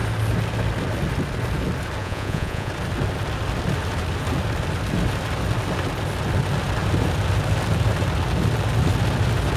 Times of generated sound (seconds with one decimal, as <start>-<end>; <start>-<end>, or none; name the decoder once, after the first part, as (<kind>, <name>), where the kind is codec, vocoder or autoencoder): 2.0-2.7 (vocoder, Vocos)